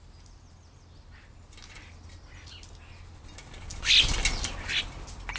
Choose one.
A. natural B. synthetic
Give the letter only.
A